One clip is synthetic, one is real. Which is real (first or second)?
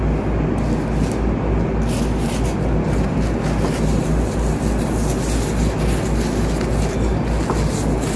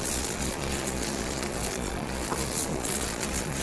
first